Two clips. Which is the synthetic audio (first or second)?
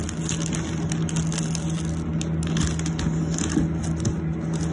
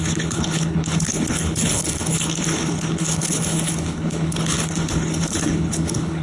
second